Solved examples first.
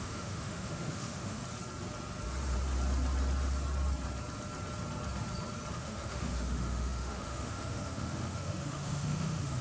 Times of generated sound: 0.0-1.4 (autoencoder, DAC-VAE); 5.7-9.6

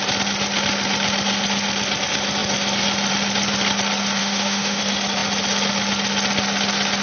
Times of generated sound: 4.2-4.8 (autoencoder, DAC-VAE)

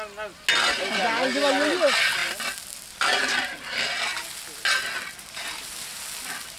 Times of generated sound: none

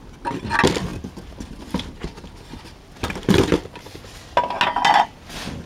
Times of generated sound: none

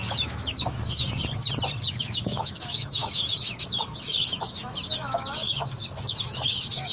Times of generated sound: 0.0-1.2 (autoencoder, DAC-VAE); 1.9-6.9